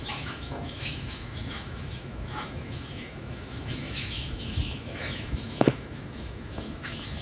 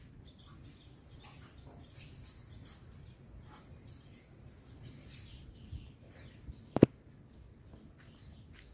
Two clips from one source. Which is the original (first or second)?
second